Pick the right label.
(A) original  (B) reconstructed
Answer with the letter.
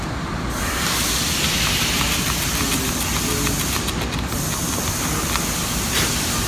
A